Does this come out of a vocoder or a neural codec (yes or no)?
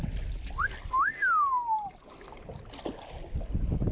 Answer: no